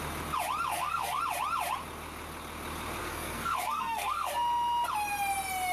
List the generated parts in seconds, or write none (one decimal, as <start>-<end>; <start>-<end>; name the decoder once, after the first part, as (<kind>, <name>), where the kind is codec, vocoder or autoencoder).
0.7-1.2 (codec, SNAC); 3.0-4.3